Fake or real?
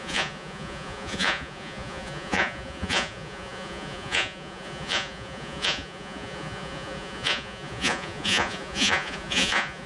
fake